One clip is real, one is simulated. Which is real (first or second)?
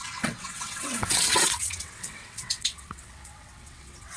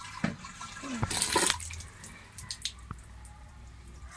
second